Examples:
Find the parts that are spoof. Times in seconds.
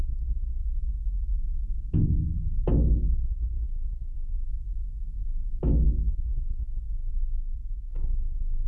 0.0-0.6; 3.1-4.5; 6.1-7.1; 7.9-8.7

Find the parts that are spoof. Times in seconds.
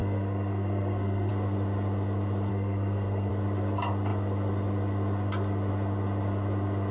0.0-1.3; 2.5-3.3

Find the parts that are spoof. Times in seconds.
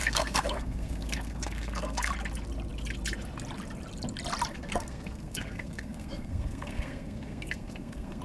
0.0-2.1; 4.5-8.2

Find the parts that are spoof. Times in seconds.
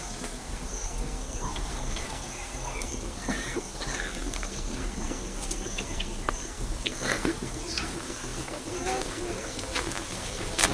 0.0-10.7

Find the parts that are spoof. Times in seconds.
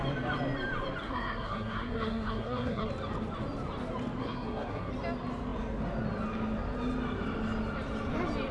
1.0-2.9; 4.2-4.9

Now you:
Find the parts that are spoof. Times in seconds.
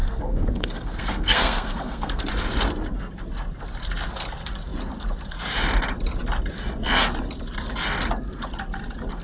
0.0-2.3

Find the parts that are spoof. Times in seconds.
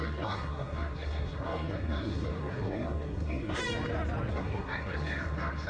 0.0-3.6; 4.3-5.7